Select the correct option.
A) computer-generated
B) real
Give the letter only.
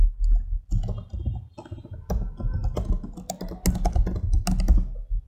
B